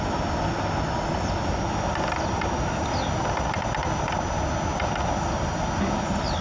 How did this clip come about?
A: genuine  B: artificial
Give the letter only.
A